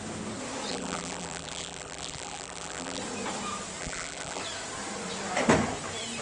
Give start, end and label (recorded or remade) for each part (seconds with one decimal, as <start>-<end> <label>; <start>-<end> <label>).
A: 0.0-0.7 recorded; 0.7-3.0 remade; 3.0-3.8 recorded; 3.8-4.4 remade; 4.4-6.2 recorded